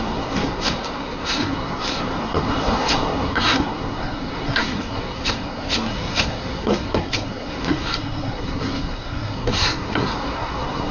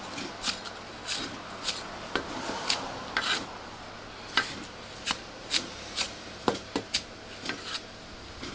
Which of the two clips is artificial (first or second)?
first